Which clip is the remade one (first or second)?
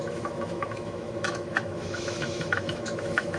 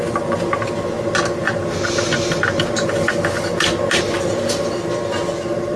first